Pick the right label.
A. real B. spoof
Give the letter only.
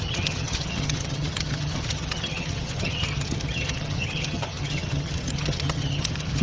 B